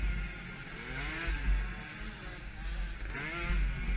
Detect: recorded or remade recorded